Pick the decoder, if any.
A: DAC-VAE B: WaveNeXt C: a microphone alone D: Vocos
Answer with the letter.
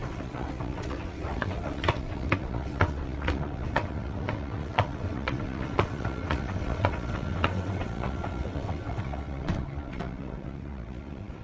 B